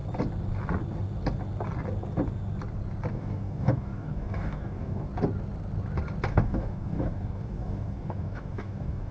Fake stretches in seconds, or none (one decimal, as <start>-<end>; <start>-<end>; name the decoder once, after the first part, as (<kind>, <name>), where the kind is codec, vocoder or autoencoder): 3.1-5.1 (codec, DAC); 6.3-9.1